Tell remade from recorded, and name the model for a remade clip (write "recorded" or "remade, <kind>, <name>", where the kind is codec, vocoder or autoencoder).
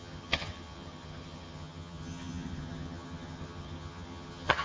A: remade, vocoder, HiFi-GAN